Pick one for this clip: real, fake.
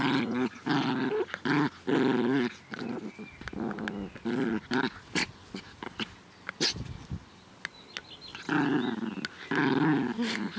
real